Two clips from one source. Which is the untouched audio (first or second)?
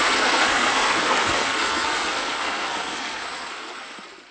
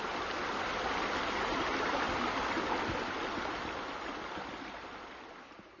second